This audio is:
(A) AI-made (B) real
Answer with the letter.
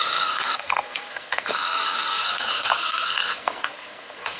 A